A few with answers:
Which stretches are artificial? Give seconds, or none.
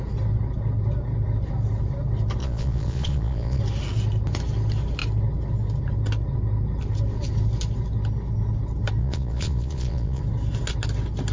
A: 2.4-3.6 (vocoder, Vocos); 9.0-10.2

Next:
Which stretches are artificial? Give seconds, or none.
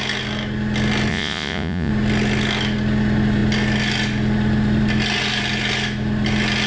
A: 1.1-1.9 (vocoder, Vocos)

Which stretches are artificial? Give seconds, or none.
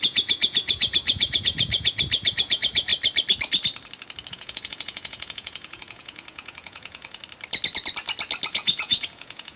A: 0.0-2.9 (vocoder, Vocos); 4.3-7.2; 8.5-9.6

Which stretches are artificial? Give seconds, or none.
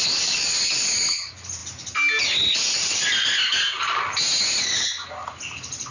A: none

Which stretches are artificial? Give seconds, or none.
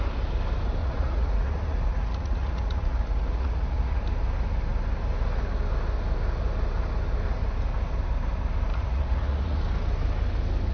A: 0.8-4.0 (vocoder, Vocos); 8.7-9.6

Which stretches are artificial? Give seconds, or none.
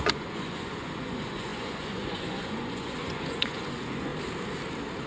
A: 0.0-4.1 (vocoder, Vocos)